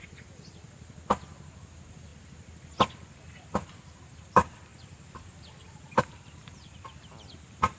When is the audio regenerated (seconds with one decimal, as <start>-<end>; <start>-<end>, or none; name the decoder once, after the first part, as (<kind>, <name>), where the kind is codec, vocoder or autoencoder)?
none